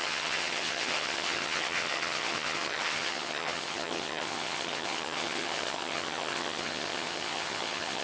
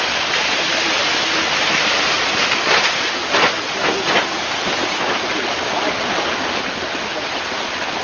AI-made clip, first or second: first